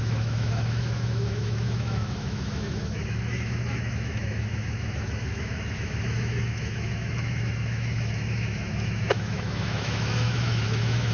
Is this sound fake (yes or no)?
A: yes